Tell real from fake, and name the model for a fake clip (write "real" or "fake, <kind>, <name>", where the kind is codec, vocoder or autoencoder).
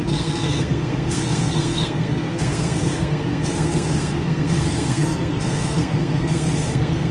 fake, codec, SNAC